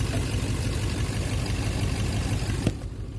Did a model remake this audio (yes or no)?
no